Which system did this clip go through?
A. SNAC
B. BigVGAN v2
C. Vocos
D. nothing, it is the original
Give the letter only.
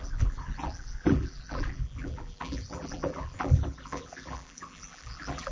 B